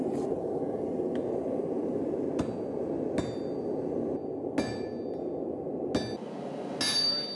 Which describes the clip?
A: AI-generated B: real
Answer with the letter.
B